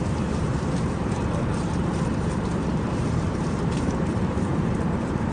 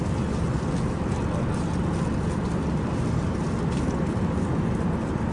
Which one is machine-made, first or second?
first